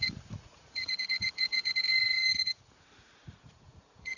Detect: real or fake fake